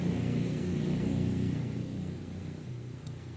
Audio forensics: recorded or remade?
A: remade